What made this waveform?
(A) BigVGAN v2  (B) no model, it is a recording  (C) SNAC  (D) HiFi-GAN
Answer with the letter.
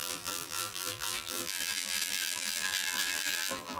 A